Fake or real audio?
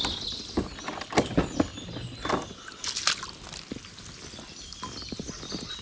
real